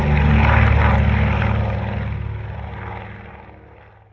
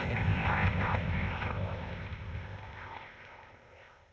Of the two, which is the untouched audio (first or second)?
first